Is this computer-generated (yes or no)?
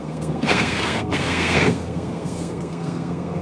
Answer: yes